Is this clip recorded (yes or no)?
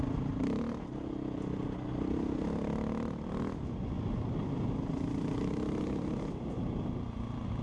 yes